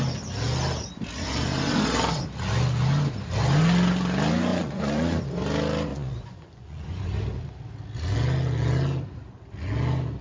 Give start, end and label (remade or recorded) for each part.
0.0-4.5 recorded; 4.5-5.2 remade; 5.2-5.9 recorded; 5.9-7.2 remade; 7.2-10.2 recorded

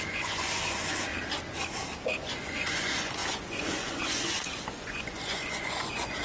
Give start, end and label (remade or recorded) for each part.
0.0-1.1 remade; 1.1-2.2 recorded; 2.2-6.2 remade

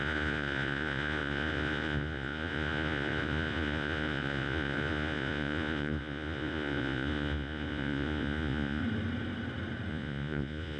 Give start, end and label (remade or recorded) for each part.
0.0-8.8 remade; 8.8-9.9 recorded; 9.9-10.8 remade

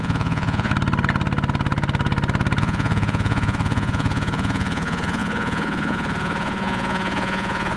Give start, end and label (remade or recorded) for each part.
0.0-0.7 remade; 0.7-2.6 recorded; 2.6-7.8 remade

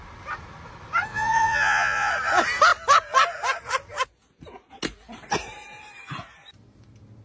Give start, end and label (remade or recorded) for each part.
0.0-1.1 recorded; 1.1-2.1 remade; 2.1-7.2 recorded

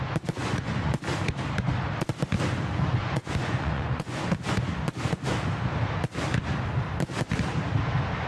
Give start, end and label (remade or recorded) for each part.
0.0-0.4 recorded; 0.4-1.0 remade; 1.0-3.0 recorded; 3.0-4.2 remade; 4.2-8.3 recorded